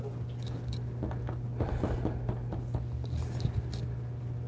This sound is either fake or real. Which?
real